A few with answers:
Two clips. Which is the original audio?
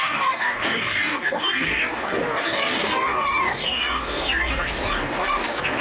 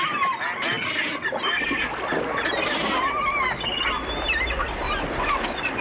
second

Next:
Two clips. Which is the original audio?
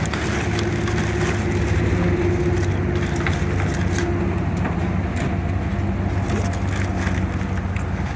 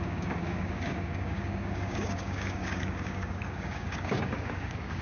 first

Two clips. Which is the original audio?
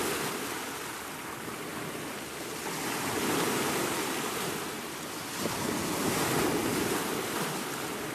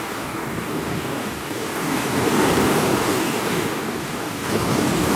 first